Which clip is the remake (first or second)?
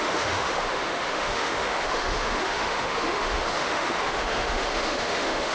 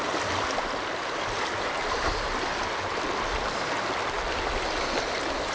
first